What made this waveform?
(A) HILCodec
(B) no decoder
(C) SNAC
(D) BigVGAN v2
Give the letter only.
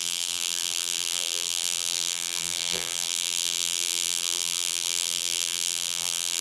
D